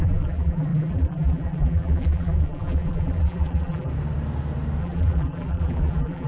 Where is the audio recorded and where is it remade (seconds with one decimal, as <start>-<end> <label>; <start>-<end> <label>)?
0.0-3.9 remade; 3.9-4.8 recorded; 4.8-6.3 remade

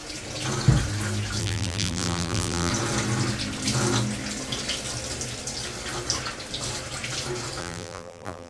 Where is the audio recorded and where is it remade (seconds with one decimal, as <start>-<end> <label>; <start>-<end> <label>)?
0.0-1.4 recorded; 1.4-2.7 remade; 2.7-7.6 recorded; 7.6-8.5 remade

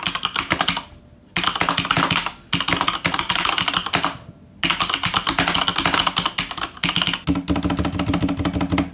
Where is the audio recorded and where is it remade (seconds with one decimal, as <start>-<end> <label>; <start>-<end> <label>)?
0.0-8.9 recorded

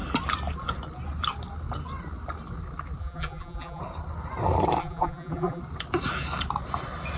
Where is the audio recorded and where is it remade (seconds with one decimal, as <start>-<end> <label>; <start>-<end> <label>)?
0.0-3.0 recorded; 3.0-3.8 remade; 3.8-4.8 recorded; 4.8-5.6 remade; 5.6-7.2 recorded

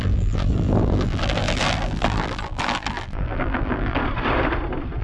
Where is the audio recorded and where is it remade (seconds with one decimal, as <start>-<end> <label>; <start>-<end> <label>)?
0.0-4.0 remade; 4.0-5.0 recorded